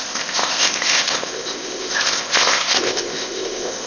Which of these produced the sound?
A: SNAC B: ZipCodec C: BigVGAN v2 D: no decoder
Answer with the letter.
B